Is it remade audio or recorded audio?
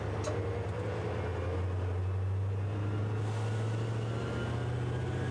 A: recorded